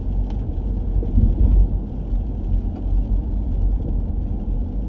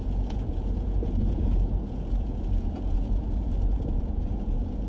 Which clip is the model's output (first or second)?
second